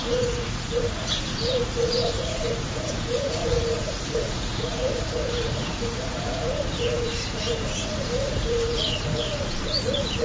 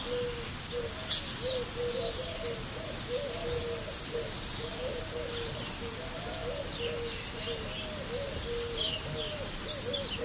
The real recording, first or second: second